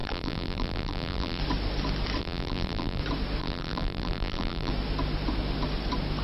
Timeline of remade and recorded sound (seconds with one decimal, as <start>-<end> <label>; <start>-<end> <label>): 0.0-1.4 remade; 1.4-2.2 recorded; 2.2-3.0 remade; 3.0-3.4 recorded; 3.4-4.7 remade; 4.7-6.2 recorded